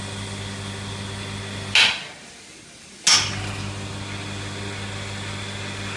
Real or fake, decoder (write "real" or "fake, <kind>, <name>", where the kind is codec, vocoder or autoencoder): real